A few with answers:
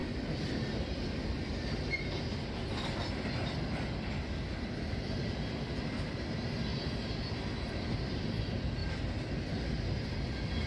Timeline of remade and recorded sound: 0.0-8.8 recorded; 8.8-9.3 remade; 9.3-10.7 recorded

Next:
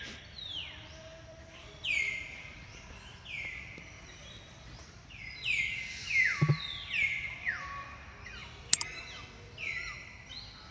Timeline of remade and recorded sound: 0.0-1.1 recorded; 1.1-5.6 remade; 5.6-8.4 recorded; 8.4-9.0 remade; 9.0-10.7 recorded

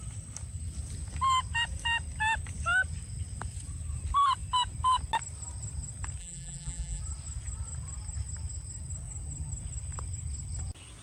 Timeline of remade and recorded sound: 0.0-6.2 recorded; 6.2-7.0 remade; 7.0-11.0 recorded

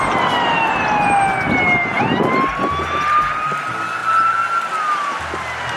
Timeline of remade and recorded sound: 0.0-5.8 recorded

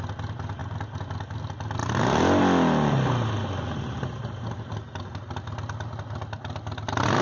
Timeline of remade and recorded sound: 0.0-7.2 recorded

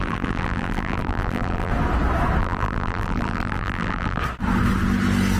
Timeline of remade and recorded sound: 0.0-1.7 remade; 1.7-2.4 recorded; 2.4-4.2 remade; 4.2-5.4 recorded

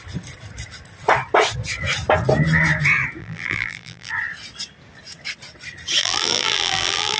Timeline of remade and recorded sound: 0.0-3.2 recorded; 3.2-4.1 remade; 4.1-6.0 recorded; 6.0-7.2 remade